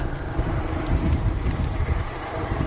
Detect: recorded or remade remade